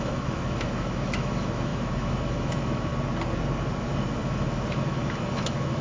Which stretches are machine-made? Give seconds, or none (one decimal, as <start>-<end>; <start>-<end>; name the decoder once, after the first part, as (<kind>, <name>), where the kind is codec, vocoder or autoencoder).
0.0-2.9 (autoencoder, DAC-VAE); 3.8-5.8